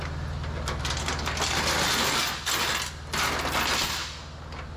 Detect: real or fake real